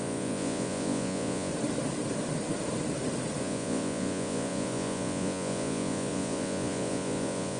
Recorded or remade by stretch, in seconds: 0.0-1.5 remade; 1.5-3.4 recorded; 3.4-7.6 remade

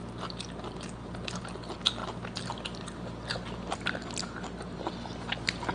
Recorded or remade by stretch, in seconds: 0.0-5.7 recorded

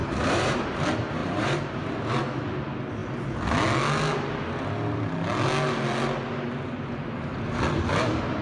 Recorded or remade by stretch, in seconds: 0.0-0.6 remade; 0.6-1.2 recorded; 1.2-2.0 remade; 2.0-8.4 recorded

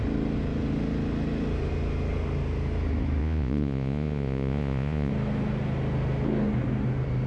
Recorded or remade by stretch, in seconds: 0.0-3.2 recorded; 3.2-5.1 remade; 5.1-7.3 recorded